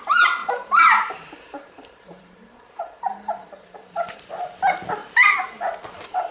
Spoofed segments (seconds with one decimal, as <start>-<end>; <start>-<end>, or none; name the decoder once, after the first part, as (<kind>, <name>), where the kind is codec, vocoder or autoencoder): 0.4-4.2 (vocoder, BigVGAN v2)